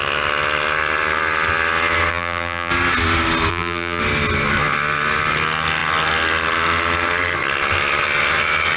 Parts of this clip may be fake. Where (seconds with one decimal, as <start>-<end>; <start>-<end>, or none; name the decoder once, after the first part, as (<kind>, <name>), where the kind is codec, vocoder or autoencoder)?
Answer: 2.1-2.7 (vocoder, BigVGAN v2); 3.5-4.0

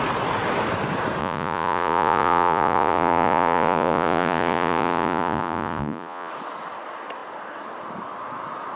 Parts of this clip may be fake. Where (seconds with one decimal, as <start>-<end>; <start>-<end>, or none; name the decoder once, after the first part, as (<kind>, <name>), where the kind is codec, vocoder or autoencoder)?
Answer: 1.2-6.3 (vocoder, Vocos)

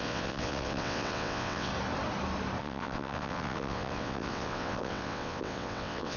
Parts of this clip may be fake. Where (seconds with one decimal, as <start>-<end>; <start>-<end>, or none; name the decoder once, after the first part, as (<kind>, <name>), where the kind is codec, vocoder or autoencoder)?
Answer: 0.0-1.7 (vocoder, WaveNeXt); 2.6-6.2

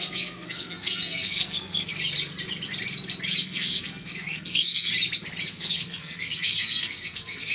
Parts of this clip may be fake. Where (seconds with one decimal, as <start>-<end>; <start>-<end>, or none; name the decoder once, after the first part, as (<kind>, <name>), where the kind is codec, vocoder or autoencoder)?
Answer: 0.0-1.9 (codec, SNAC); 3.4-4.9; 5.5-7.5